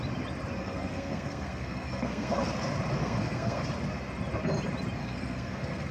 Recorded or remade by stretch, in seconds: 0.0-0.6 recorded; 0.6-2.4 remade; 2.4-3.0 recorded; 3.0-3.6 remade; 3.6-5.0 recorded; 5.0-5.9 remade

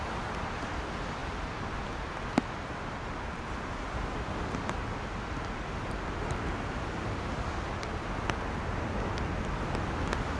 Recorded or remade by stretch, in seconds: 0.0-10.4 recorded

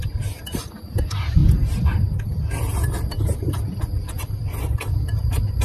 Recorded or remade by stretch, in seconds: 0.0-5.6 recorded